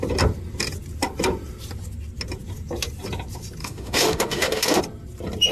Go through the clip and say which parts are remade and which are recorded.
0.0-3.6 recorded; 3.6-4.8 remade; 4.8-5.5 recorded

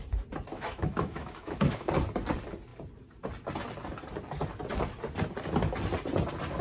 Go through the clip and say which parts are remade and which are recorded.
0.0-0.5 recorded; 0.5-1.9 remade; 1.9-6.6 recorded

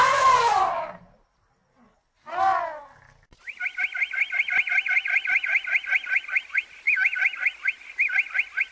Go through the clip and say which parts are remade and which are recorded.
0.0-8.7 recorded

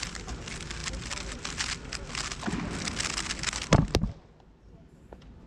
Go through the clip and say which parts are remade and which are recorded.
0.0-5.5 recorded